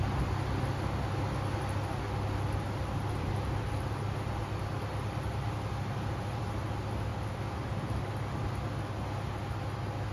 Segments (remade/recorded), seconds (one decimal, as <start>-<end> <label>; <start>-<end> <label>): 0.0-10.1 recorded